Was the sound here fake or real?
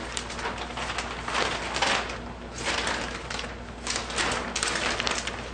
real